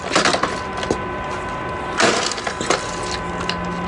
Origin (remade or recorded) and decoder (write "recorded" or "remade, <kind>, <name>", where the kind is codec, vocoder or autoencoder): recorded